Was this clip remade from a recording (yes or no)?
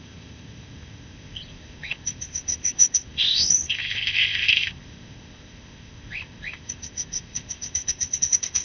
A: yes